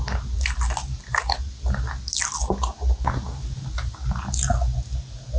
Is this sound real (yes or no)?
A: yes